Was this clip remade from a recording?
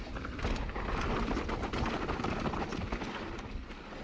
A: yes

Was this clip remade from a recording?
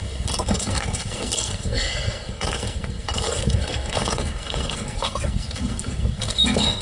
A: yes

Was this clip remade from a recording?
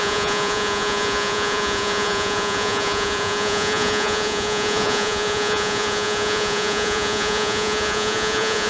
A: yes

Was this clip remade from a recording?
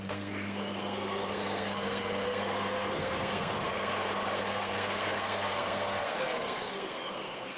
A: yes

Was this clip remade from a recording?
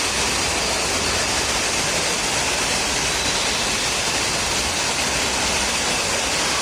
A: yes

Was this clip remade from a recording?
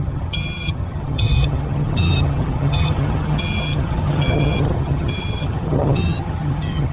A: yes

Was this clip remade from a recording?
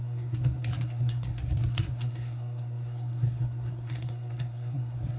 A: yes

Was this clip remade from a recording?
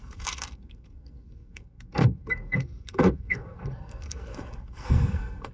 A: yes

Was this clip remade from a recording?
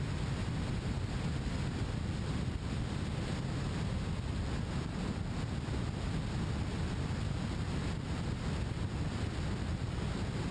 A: no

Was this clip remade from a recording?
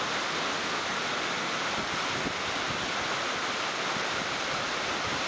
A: no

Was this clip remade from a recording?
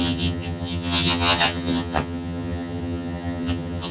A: yes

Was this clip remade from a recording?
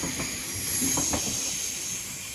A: no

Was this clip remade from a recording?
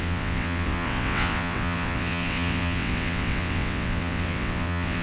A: yes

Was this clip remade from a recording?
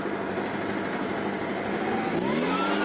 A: no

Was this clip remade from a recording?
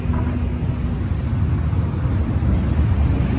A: no